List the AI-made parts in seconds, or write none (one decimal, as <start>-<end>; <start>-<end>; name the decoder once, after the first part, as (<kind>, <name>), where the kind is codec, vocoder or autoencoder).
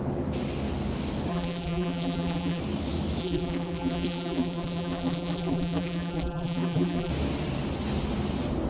1.3-2.6 (vocoder, BigVGAN v2); 3.2-7.1